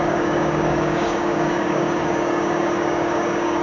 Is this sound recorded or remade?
remade